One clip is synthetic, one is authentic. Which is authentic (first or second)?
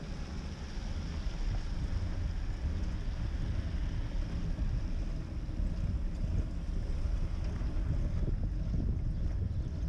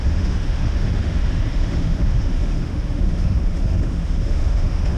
first